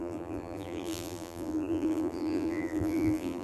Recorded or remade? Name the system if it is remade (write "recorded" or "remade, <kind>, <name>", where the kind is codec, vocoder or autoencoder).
remade, vocoder, BigVGAN v2